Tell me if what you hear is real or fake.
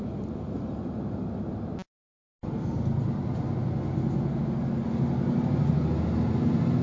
real